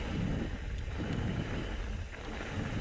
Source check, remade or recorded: recorded